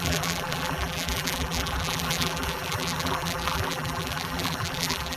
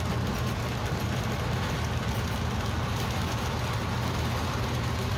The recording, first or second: second